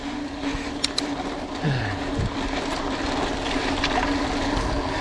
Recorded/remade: recorded